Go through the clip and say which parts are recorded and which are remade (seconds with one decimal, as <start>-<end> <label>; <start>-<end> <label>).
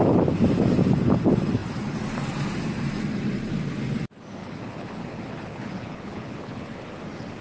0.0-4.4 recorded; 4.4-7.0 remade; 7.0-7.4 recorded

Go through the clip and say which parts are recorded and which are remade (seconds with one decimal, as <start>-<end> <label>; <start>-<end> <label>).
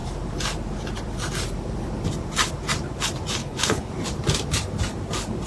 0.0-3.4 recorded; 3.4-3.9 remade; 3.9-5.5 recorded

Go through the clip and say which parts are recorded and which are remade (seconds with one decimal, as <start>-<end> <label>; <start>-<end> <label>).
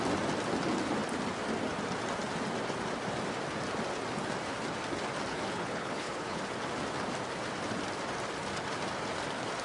0.0-5.3 recorded; 5.3-6.4 remade; 6.4-9.6 recorded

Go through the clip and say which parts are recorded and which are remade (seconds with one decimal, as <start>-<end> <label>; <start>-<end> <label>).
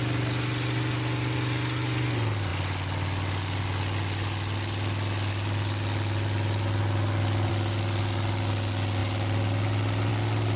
0.0-10.6 recorded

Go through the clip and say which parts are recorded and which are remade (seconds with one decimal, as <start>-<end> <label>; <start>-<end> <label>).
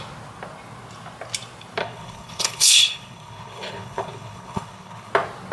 0.0-1.8 recorded; 1.8-5.1 remade; 5.1-5.5 recorded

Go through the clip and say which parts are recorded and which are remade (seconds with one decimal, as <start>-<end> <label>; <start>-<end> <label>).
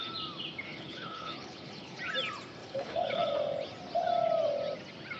0.0-0.7 recorded; 0.7-2.0 remade; 2.0-2.6 recorded; 2.6-3.3 remade; 3.3-5.2 recorded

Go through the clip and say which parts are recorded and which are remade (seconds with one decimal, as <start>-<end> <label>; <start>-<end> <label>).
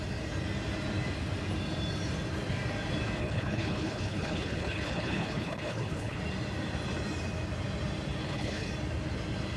0.0-3.2 recorded; 3.2-6.2 remade; 6.2-8.2 recorded; 8.2-8.7 remade; 8.7-9.6 recorded